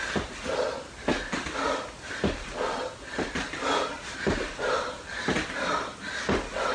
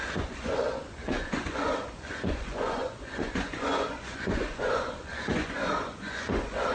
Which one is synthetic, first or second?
second